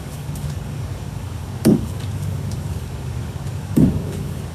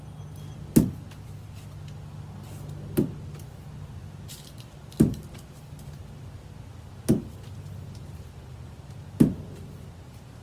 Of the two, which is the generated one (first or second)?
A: first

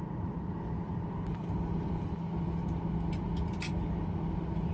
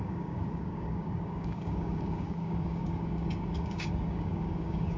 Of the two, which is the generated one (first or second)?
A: second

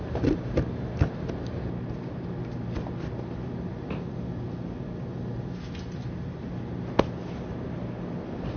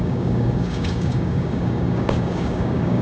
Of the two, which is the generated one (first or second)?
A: second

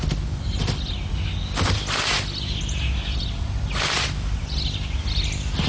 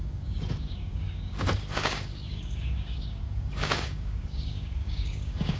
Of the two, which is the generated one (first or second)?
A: second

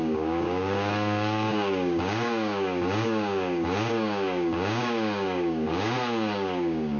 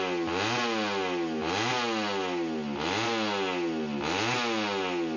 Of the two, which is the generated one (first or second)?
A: first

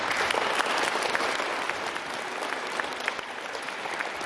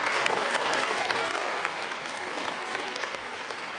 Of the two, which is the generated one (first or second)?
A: second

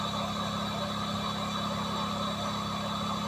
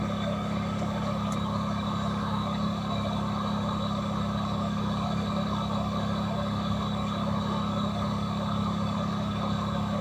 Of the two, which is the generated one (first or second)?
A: second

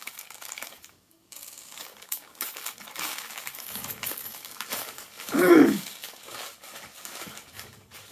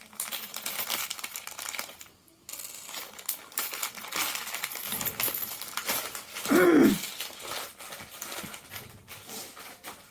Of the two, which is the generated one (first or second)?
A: first